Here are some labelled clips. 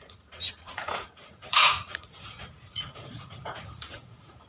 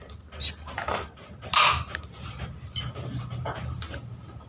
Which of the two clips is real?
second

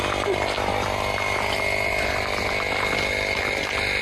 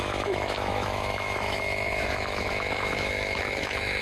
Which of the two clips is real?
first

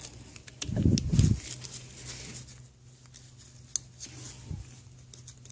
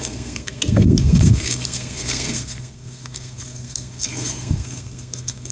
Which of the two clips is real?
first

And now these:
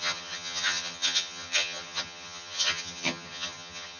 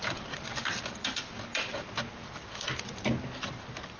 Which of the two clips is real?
second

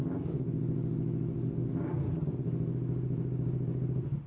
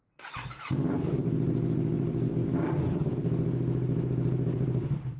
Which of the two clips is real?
first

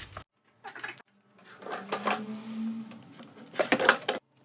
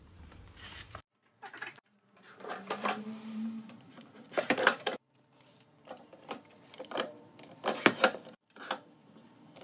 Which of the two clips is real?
first